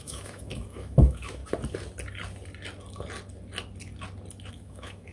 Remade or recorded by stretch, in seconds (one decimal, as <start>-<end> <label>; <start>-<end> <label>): 0.0-1.4 remade; 1.4-4.5 recorded; 4.5-5.1 remade